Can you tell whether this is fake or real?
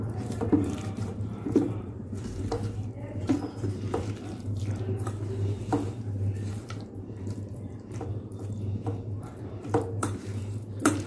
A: fake